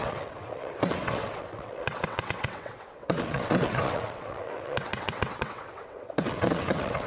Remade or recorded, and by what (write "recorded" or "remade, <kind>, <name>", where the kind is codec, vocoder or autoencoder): remade, vocoder, WaveNeXt